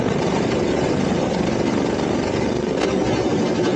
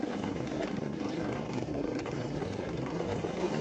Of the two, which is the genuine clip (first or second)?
first